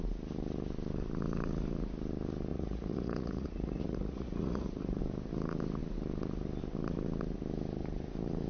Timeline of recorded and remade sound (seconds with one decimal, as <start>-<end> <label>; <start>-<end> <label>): 0.0-2.5 recorded; 2.5-5.0 remade; 5.0-8.5 recorded